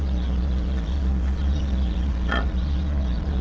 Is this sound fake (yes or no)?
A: yes